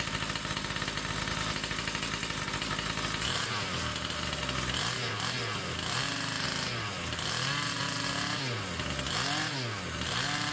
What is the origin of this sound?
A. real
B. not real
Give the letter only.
A